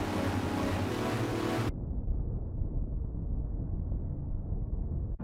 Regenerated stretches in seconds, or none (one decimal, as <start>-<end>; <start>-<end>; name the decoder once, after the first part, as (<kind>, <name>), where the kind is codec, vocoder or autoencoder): 2.1-5.2 (codec, SNAC)